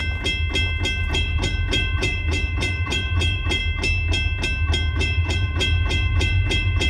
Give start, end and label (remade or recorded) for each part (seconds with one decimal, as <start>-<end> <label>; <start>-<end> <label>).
0.0-1.0 recorded; 1.0-3.6 remade; 3.6-4.9 recorded; 4.9-6.9 remade